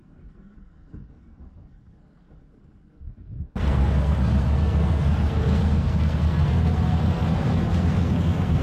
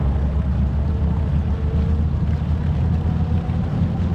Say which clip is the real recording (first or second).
second